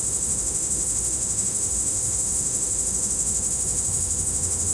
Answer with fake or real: fake